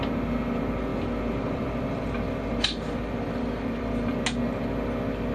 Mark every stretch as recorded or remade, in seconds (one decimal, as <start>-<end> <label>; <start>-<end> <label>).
0.0-0.9 recorded; 0.9-4.1 remade; 4.1-5.3 recorded